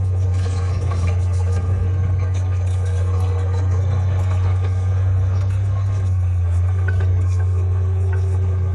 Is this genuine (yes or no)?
no